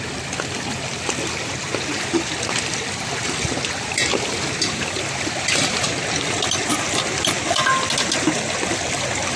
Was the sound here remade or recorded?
recorded